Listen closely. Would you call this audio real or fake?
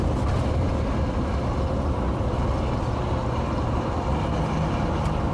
real